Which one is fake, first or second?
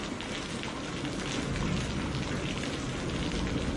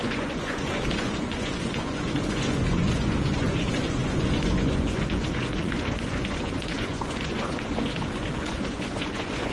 second